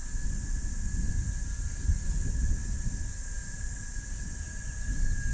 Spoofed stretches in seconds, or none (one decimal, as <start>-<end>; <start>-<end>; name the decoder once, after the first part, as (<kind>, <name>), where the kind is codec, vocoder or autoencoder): none